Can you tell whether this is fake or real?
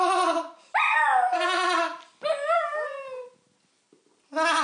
real